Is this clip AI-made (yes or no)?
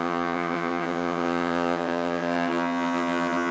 yes